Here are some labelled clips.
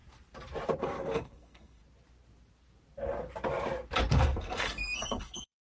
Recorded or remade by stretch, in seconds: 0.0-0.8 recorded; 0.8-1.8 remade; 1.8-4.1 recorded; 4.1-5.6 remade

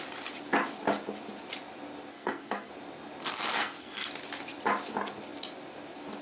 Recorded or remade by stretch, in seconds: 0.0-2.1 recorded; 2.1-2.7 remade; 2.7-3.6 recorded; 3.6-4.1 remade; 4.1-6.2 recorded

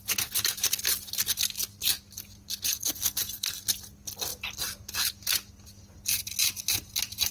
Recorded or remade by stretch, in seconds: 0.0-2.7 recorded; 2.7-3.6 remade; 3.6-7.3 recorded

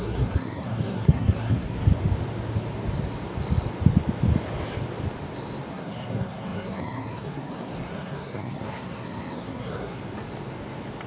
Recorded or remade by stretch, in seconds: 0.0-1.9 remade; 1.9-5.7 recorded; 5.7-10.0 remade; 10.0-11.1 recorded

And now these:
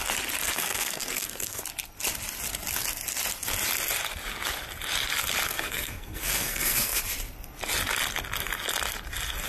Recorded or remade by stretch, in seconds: 0.0-0.4 recorded; 0.4-1.6 remade; 1.6-5.5 recorded; 5.5-7.0 remade; 7.0-9.5 recorded

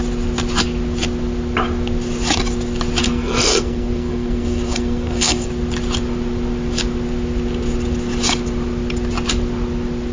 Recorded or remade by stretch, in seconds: 0.0-3.0 recorded; 3.0-5.5 remade; 5.5-10.1 recorded